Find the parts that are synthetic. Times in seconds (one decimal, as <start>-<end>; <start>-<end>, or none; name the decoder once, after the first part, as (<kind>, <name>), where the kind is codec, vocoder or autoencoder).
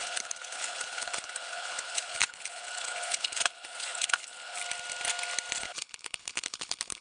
0.0-4.6 (codec, HILCodec); 5.6-7.0